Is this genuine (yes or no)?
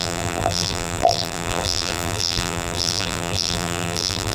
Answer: no